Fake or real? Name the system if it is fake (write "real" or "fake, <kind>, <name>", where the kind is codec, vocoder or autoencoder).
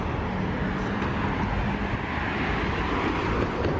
real